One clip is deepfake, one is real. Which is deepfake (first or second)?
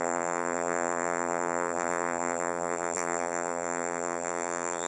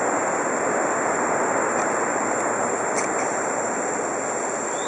first